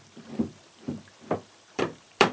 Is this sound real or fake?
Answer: fake